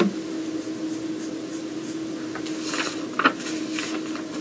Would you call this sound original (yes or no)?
yes